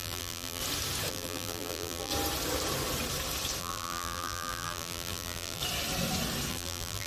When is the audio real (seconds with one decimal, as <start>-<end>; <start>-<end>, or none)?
0.6-1.1; 2.1-3.6; 5.6-6.5